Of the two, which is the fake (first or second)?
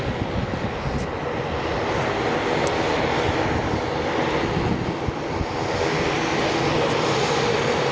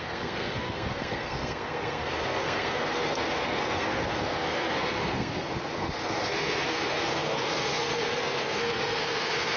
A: second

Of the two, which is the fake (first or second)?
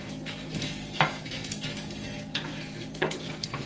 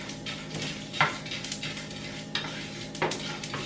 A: first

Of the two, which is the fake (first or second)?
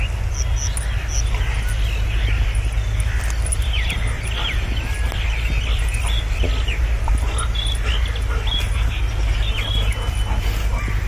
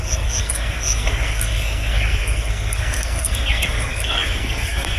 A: second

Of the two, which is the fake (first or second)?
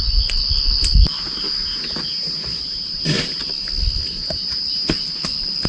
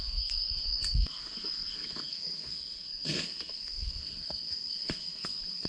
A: second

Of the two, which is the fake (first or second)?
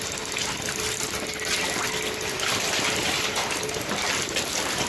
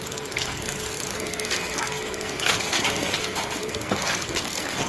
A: second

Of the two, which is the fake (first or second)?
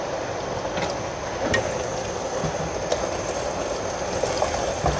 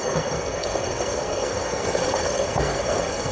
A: second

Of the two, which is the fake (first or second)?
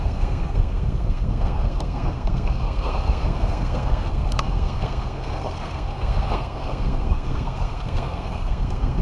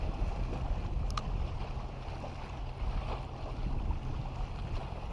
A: first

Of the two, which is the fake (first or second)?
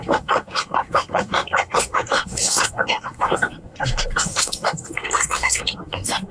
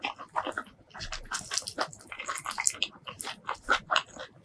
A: first